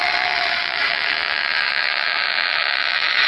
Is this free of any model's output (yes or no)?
no